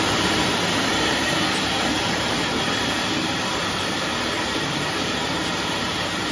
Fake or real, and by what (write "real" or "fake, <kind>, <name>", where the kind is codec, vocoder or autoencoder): fake, vocoder, BigVGAN v2